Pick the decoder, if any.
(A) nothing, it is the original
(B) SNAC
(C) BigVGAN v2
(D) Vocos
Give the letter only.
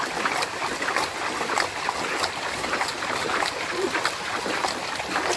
A